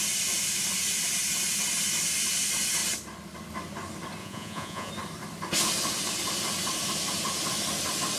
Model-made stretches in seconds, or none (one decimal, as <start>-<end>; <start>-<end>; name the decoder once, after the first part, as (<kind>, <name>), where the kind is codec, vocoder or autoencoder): 4.2-4.9 (vocoder, Vocos)